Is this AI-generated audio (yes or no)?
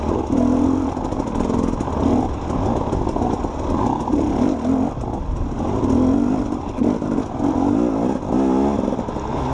no